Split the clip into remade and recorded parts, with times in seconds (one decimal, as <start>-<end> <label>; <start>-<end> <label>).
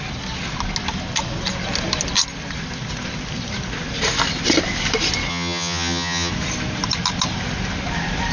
0.0-5.3 recorded; 5.3-6.3 remade; 6.3-8.3 recorded